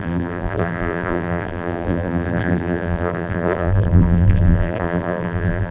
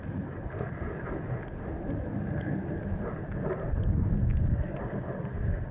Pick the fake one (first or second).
first